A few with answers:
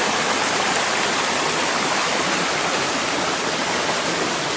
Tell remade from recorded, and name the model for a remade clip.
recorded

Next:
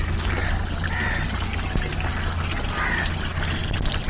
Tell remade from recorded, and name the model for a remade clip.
recorded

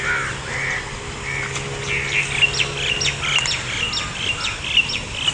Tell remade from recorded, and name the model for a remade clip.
recorded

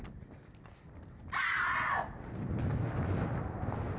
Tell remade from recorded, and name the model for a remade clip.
recorded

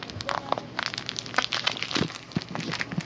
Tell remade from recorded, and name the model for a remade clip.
recorded